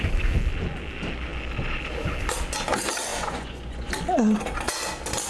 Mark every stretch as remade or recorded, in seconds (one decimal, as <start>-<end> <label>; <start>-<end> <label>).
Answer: 0.0-3.1 recorded; 3.1-3.9 remade; 3.9-5.3 recorded